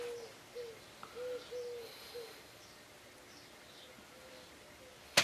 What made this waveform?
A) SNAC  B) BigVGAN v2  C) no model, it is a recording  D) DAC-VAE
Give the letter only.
C